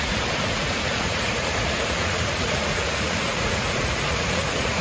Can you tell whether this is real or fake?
fake